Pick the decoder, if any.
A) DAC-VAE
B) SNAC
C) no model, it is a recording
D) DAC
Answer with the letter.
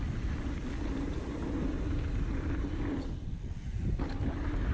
C